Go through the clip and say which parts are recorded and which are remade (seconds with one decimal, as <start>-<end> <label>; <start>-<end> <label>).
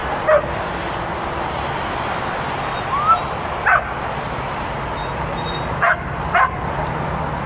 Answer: 0.0-7.5 recorded